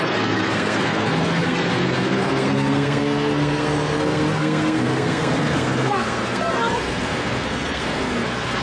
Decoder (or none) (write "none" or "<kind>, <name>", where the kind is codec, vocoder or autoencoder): codec, SNAC